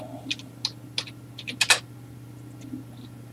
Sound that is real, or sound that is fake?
real